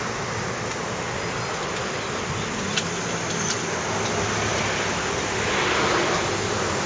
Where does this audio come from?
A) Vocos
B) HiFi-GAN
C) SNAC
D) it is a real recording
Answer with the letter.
D